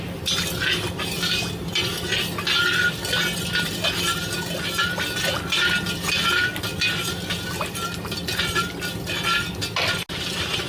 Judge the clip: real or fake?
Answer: real